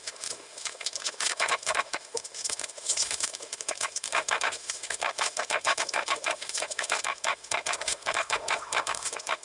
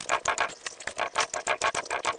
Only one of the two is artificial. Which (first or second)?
first